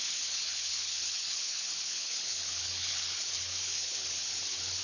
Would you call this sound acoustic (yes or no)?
no